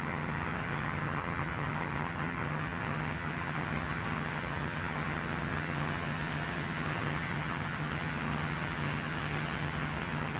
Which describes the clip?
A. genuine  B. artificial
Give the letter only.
B